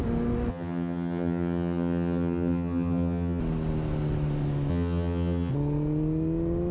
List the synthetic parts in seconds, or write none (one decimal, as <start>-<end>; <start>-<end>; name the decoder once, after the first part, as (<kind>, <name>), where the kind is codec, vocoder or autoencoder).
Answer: 0.5-3.4 (vocoder, HiFi-GAN); 4.7-5.5